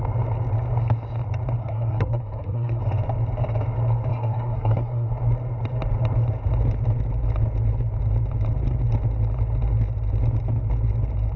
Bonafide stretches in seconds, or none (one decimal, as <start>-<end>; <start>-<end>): 0.0-1.6; 2.8-4.1; 5.2-11.4